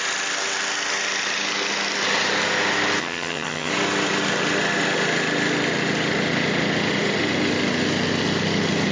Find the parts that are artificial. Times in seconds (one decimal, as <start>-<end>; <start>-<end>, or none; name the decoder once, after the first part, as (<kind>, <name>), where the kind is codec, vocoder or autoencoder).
3.0-3.7 (vocoder, HiFi-GAN)